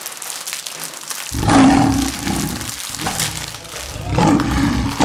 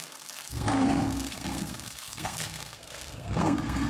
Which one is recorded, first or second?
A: first